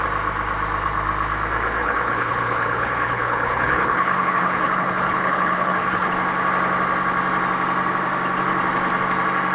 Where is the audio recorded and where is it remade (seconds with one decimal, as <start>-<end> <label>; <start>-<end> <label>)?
0.0-1.8 recorded; 1.8-6.1 remade; 6.1-9.5 recorded